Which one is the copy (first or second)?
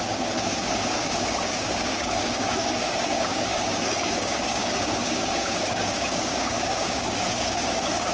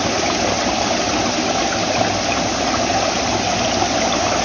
first